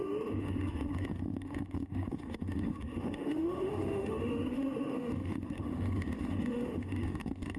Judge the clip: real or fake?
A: fake